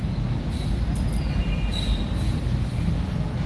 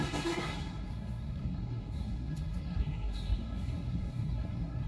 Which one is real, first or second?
first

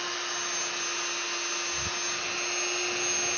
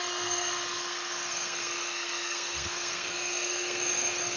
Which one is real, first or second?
first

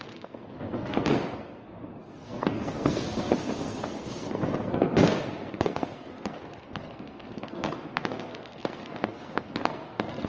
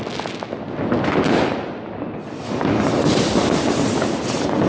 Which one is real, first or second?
second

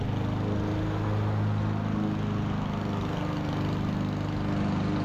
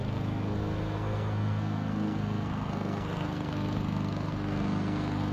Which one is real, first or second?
first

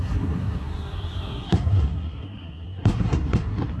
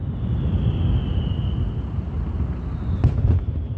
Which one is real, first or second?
second